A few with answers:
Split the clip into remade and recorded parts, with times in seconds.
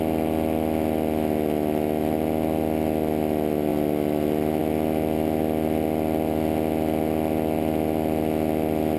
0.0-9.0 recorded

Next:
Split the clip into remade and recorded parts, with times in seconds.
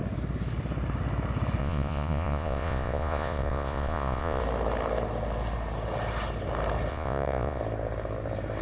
0.0-1.6 recorded; 1.6-4.4 remade; 4.4-6.9 recorded; 6.9-7.6 remade; 7.6-8.6 recorded